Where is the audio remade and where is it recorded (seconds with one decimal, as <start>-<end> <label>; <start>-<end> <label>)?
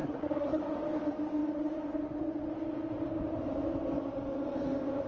0.0-0.6 remade; 0.6-5.1 recorded